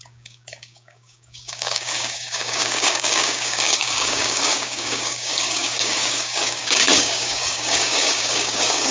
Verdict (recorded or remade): remade